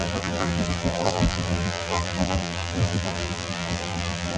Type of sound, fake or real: fake